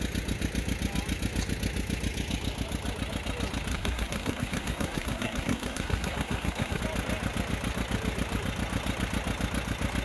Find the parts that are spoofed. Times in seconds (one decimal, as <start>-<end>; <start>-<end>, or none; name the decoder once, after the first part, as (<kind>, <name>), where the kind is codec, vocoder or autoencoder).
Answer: 3.7-6.8 (codec, SNAC)

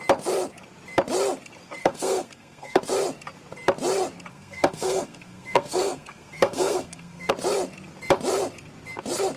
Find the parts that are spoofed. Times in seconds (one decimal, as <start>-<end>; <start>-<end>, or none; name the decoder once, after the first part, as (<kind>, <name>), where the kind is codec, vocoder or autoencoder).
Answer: 1.8-2.8 (codec, SNAC); 4.3-7.3